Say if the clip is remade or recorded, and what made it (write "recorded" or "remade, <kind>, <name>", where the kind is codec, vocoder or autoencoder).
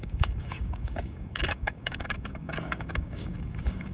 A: remade, codec, DAC